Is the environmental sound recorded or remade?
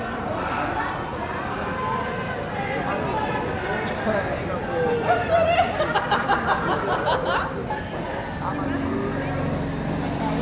recorded